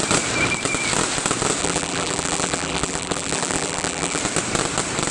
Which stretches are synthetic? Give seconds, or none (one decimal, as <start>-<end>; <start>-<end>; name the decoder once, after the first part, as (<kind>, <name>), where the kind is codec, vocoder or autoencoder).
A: 1.6-4.2 (vocoder, BigVGAN v2)